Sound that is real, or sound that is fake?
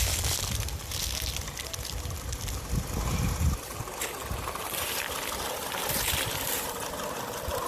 real